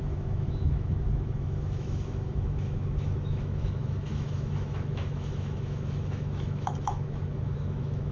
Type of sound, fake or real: fake